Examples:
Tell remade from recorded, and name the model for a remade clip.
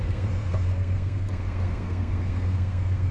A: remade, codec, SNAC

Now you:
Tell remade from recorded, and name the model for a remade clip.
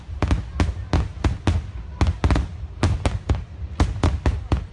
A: recorded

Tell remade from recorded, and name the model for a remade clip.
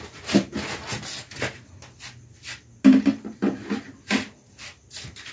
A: recorded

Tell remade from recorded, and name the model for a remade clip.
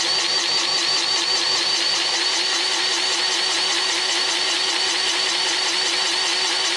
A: recorded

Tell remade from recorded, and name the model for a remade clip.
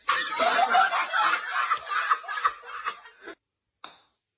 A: recorded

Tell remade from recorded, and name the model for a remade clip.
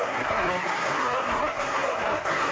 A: remade, codec, SNAC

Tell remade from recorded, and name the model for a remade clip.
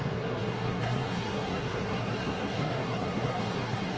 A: remade, codec, SNAC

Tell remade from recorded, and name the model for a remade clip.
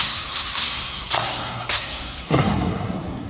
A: remade, codec, SNAC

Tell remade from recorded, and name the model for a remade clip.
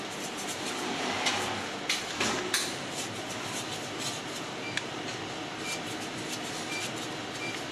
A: recorded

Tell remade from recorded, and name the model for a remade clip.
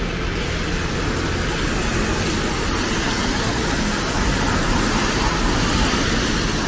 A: recorded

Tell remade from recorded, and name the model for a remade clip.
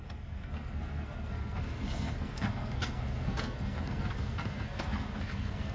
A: remade, codec, SNAC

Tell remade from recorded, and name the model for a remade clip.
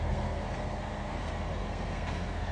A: remade, codec, SNAC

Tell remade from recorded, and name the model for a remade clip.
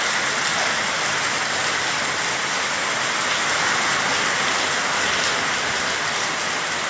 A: recorded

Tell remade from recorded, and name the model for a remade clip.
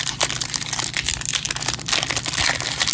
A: recorded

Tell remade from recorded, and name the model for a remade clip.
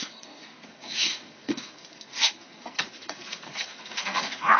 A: remade, codec, SNAC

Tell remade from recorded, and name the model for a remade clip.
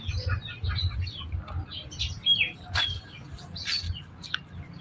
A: recorded